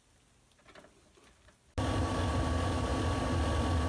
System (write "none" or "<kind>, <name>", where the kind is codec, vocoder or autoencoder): none